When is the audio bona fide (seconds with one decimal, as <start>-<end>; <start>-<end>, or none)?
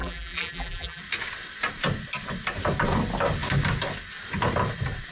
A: 1.0-5.1